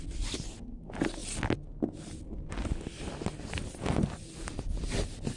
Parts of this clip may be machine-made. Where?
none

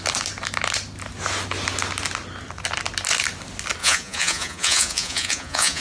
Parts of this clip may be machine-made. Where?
3.8-5.8 (vocoder, Vocos)

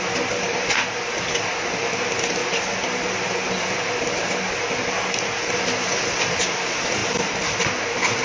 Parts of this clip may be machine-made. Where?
none

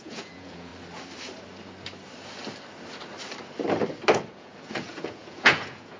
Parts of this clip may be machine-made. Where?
0.0-0.7 (vocoder, Vocos); 4.3-6.0

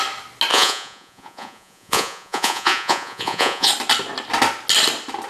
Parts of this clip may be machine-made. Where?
0.5-3.7 (vocoder, Vocos)

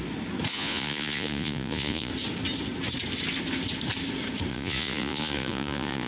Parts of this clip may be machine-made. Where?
0.5-2.1 (vocoder, Vocos); 4.5-6.1

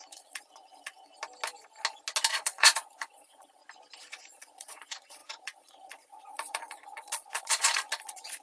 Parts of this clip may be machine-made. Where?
0.0-1.1 (vocoder, Vocos); 2.3-3.6; 4.2-8.4

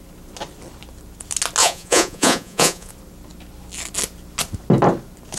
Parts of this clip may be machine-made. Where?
1.6-2.9 (vocoder, Vocos)